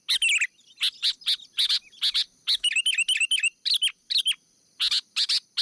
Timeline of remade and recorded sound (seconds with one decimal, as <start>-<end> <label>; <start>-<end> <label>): 0.0-5.6 recorded